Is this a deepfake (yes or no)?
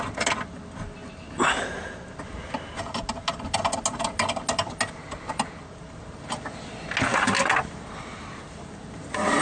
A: no